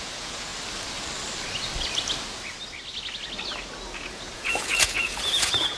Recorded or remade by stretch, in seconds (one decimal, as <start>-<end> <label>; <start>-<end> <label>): 0.0-0.5 remade; 0.5-4.0 recorded; 4.0-5.8 remade